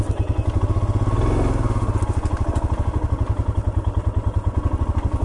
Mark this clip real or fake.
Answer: real